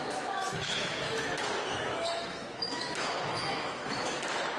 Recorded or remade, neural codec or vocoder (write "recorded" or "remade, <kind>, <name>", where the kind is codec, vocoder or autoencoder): remade, autoencoder, DAC-VAE